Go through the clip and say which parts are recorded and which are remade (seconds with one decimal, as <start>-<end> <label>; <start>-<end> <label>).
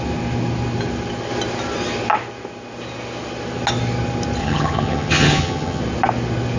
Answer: 0.0-4.4 recorded; 4.4-5.8 remade; 5.8-6.6 recorded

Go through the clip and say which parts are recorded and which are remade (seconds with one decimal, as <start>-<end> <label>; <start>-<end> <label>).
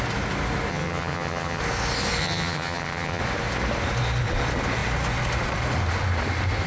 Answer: 0.0-0.7 recorded; 0.7-1.6 remade; 1.6-2.2 recorded; 2.2-3.2 remade; 3.2-6.7 recorded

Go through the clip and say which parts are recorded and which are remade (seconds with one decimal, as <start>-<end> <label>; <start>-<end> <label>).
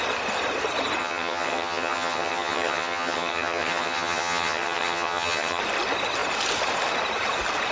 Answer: 0.0-1.0 recorded; 1.0-5.6 remade; 5.6-7.7 recorded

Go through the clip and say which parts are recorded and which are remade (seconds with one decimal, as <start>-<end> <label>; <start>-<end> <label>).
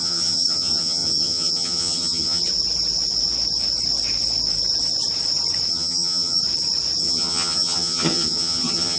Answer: 0.0-2.4 remade; 2.4-5.7 recorded; 5.7-6.4 remade; 6.4-7.0 recorded; 7.0-9.0 remade